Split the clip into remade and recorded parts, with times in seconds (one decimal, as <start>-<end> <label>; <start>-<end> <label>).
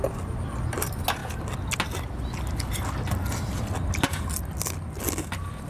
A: 0.0-5.7 recorded